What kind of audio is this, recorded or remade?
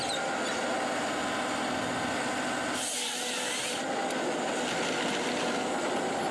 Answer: recorded